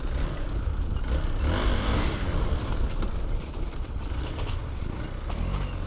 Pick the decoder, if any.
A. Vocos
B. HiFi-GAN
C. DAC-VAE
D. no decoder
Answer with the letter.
D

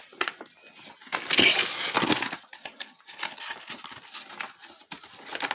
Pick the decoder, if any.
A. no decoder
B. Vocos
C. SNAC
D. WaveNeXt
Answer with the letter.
A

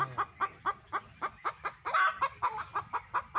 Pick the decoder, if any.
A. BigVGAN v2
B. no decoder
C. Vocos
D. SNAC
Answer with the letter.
B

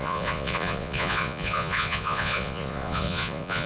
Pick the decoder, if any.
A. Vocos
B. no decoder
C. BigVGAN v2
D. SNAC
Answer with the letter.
A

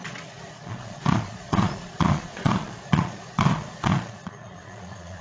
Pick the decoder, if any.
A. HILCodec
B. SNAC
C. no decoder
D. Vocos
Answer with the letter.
D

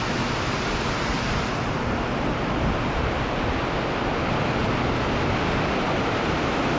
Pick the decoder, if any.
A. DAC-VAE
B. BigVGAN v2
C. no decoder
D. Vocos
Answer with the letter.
C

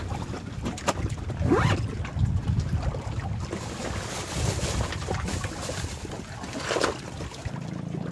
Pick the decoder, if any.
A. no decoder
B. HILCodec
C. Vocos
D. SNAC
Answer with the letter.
A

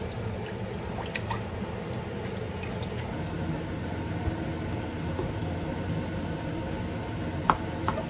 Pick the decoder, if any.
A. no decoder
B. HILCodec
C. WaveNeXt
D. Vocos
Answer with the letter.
A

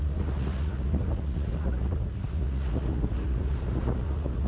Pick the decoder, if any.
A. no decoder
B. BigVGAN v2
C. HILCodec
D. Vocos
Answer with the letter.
D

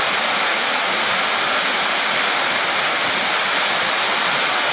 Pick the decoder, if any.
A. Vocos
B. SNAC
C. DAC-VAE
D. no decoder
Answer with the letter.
D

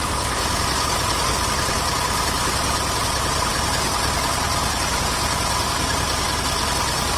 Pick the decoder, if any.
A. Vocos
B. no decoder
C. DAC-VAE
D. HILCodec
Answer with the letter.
B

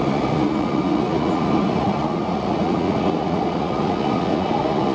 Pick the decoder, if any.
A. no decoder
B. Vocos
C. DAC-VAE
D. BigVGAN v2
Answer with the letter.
B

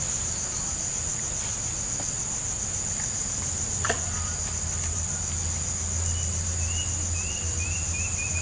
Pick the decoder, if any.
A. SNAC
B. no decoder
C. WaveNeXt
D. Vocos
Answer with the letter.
B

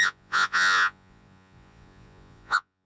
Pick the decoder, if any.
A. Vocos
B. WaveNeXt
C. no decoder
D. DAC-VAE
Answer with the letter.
A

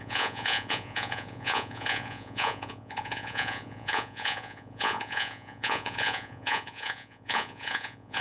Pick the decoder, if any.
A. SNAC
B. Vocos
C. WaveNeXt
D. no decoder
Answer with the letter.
B